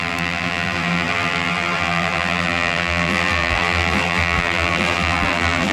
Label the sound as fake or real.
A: fake